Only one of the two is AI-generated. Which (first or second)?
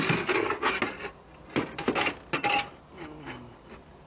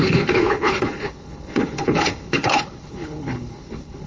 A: second